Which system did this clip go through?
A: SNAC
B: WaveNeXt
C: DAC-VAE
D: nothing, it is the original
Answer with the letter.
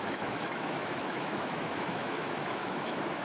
C